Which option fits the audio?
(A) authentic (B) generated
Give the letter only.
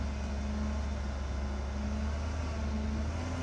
A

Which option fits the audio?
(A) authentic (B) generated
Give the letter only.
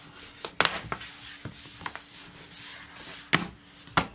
A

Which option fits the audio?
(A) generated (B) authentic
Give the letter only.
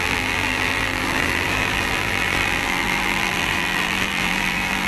A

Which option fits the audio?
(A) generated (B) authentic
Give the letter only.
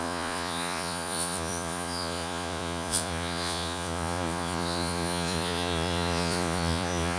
A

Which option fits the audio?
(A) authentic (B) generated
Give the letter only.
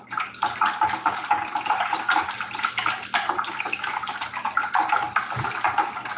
A